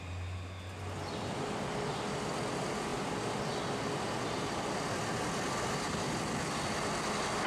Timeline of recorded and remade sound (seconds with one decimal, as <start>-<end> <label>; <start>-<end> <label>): 0.0-7.5 recorded